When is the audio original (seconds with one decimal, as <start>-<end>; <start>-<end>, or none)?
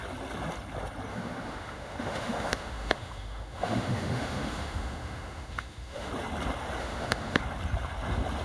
0.0-1.1; 6.1-6.8; 7.4-8.4